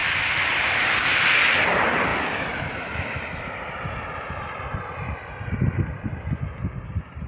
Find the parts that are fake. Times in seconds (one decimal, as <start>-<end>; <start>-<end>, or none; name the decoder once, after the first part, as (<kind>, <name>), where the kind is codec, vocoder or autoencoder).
0.0-1.3 (vocoder, BigVGAN v2); 2.1-6.3